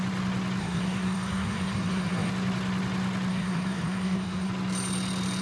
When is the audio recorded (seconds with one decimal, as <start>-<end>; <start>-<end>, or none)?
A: 0.0-0.6; 2.3-3.3; 4.5-5.4